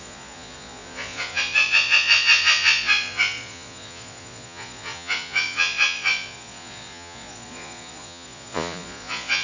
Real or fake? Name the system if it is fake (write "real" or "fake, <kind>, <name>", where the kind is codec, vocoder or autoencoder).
fake, vocoder, Vocos